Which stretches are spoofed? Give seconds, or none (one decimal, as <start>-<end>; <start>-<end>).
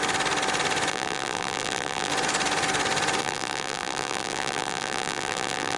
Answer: 0.9-2.1; 3.2-5.8